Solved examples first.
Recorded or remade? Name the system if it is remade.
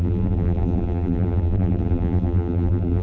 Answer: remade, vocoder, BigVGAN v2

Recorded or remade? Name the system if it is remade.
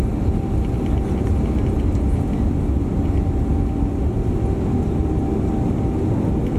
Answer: recorded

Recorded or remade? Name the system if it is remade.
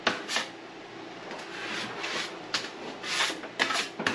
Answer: recorded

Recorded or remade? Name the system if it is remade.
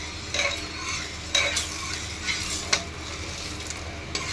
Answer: recorded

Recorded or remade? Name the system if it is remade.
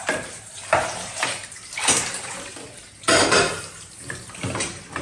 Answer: remade, vocoder, BigVGAN v2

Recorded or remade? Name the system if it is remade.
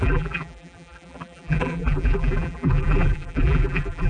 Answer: remade, vocoder, BigVGAN v2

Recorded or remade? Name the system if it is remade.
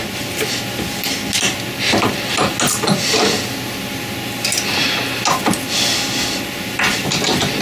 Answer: recorded